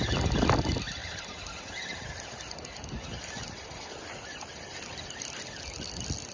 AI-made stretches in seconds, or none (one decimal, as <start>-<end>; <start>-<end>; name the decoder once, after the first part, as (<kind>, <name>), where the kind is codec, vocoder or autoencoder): none